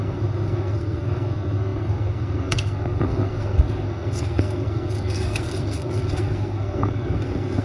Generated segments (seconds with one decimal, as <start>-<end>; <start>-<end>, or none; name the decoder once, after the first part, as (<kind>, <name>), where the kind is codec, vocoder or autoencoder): 0.0-7.6 (codec, SNAC)